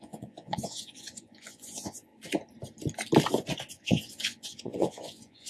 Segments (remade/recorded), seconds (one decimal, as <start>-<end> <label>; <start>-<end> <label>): 0.0-2.1 remade; 2.1-3.7 recorded; 3.7-5.5 remade